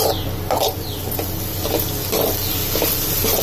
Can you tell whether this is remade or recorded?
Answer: recorded